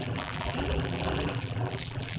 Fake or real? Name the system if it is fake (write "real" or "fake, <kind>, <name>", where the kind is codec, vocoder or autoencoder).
fake, vocoder, BigVGAN v2